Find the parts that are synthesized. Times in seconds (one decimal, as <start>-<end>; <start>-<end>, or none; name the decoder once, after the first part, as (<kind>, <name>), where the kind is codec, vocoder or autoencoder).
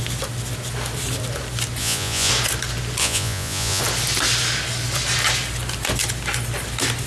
1.8-2.3 (vocoder, Vocos); 3.0-3.8